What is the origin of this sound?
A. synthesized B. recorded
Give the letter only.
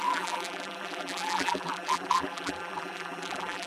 A